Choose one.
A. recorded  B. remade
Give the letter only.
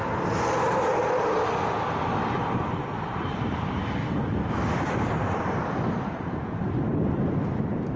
A